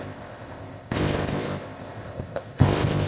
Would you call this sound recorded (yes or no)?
no